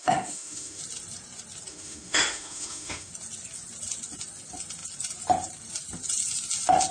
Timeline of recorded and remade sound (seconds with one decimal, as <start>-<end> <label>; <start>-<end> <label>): 0.0-0.8 remade; 0.8-1.7 recorded; 1.7-3.1 remade; 3.1-6.9 recorded